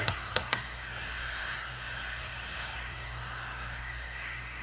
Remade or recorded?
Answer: remade